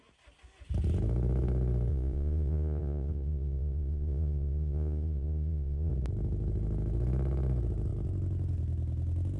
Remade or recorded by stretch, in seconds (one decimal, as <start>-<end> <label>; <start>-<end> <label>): 0.0-1.9 recorded; 1.9-5.9 remade; 5.9-9.4 recorded